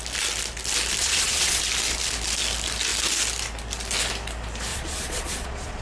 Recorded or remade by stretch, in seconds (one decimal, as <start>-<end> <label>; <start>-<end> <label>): 0.0-1.0 recorded; 1.0-1.6 remade; 1.6-4.7 recorded; 4.7-5.8 remade